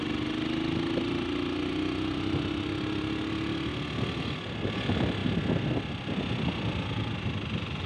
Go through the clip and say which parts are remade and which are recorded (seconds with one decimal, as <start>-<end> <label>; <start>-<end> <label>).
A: 0.0-7.9 recorded